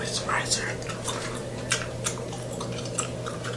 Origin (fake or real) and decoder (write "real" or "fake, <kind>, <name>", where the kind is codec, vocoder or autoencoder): fake, vocoder, BigVGAN v2